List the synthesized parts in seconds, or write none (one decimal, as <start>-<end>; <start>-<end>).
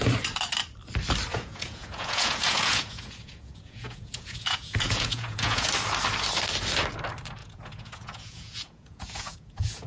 1.3-5.7; 7.4-9.9